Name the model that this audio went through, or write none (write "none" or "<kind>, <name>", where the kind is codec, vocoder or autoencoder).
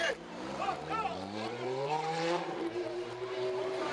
vocoder, BigVGAN v2